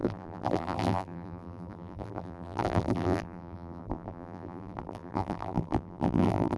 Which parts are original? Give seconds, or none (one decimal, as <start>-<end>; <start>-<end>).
none